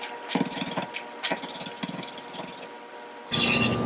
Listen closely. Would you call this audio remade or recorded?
recorded